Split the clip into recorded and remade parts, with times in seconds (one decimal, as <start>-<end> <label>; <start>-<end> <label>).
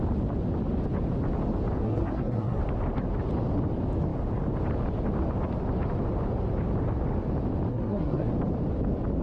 0.0-1.8 recorded; 1.8-2.6 remade; 2.6-7.7 recorded; 7.7-8.3 remade; 8.3-9.2 recorded